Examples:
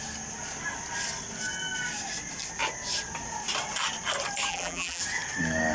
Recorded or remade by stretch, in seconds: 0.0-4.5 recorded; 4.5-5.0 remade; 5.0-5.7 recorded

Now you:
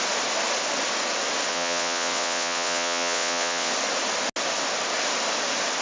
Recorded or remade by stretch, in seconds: 0.0-1.5 recorded; 1.5-3.7 remade; 3.7-5.8 recorded